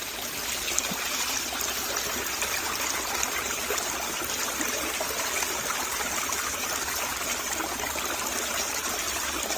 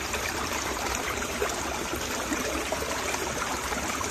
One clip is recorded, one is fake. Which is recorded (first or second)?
first